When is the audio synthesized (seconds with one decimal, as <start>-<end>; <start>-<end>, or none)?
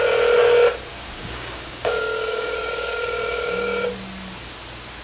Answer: 0.9-3.9